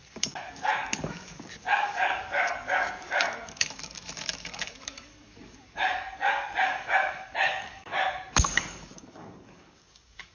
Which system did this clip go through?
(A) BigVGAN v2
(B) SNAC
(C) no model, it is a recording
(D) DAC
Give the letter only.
D